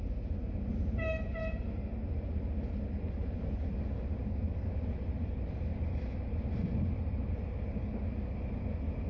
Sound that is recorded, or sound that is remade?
recorded